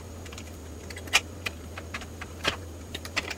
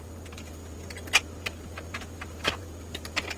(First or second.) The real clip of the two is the second